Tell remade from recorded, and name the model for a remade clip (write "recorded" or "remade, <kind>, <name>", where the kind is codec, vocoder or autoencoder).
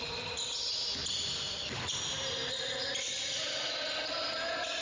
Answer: recorded